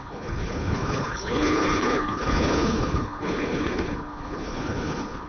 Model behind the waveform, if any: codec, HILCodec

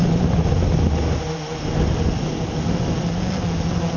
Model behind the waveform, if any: none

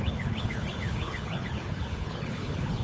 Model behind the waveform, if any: codec, HILCodec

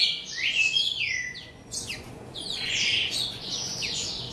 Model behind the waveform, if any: vocoder, Vocos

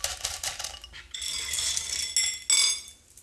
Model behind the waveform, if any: none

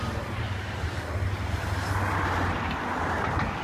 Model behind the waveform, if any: none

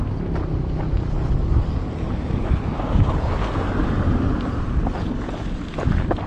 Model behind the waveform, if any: none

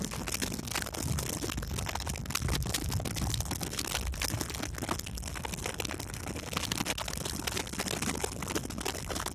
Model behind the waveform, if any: none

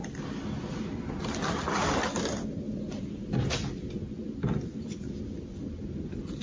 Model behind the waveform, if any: none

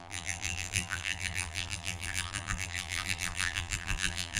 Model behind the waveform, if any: vocoder, BigVGAN v2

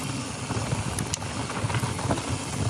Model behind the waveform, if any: none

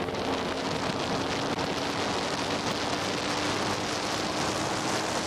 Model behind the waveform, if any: none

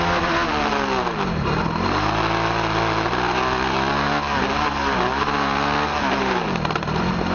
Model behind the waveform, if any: none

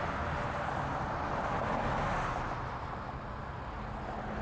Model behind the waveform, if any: none